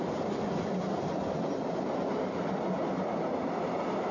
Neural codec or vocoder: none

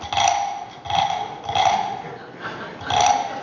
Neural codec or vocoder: none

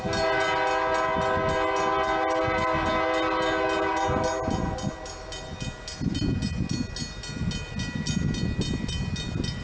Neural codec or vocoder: none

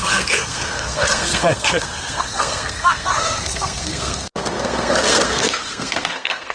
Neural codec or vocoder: codec, SNAC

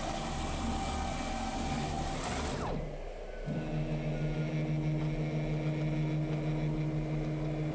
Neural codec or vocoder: none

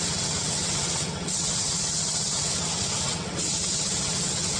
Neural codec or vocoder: vocoder, WaveNeXt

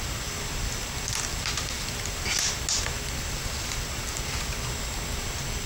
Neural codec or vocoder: none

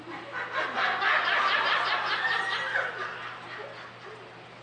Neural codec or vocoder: none